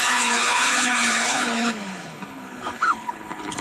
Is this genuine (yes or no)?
no